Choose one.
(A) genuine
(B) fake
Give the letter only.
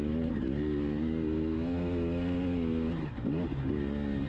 A